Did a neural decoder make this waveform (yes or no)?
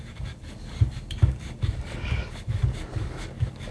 yes